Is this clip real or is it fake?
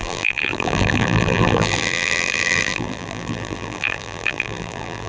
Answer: fake